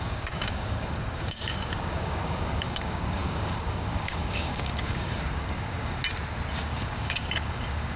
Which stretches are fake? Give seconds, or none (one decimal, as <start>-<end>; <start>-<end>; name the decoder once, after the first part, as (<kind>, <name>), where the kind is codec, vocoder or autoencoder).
0.0-6.0 (codec, DAC); 6.5-8.0